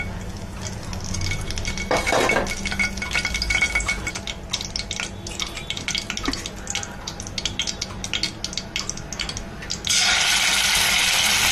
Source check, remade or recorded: recorded